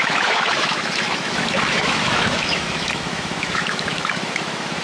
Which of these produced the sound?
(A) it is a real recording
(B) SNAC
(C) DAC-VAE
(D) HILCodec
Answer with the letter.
C